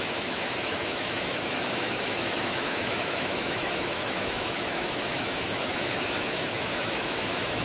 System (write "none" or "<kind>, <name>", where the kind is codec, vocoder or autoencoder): autoencoder, DAC-VAE